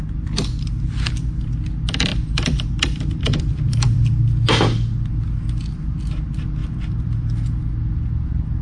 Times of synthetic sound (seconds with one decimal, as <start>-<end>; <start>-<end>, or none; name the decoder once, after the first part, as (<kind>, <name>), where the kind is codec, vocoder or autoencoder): 2.1-4.2 (vocoder, BigVGAN v2); 6.6-7.6